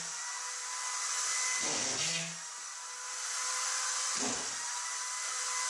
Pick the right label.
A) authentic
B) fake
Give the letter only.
A